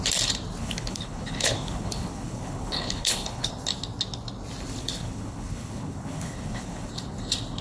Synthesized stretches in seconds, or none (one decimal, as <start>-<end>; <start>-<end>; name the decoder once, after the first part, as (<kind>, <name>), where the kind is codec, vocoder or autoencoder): 0.6-3.5 (codec, HILCodec); 4.8-6.9